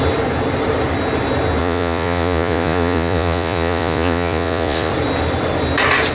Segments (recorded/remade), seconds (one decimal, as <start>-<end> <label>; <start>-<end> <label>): 0.0-1.6 recorded; 1.6-4.9 remade; 4.9-6.1 recorded